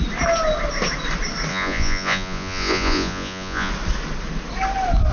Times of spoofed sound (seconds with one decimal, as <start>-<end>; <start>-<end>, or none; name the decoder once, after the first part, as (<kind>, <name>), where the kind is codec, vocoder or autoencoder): 1.5-3.7 (vocoder, Vocos)